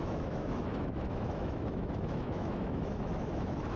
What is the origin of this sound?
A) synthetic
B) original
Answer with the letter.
A